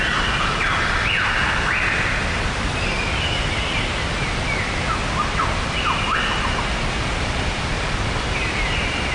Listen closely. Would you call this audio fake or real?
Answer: real